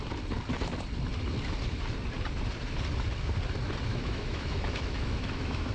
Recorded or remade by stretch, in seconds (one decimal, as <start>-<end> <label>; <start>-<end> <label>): 0.0-3.9 recorded; 3.9-5.7 remade